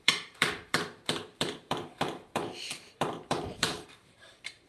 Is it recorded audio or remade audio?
remade